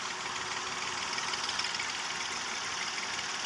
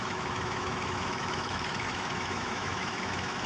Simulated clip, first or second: second